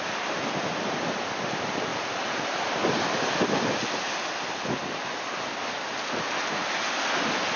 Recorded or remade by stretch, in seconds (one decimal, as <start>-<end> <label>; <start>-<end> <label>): 0.0-7.6 recorded